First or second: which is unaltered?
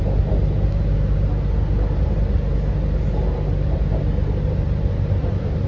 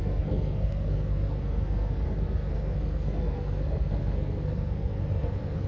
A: first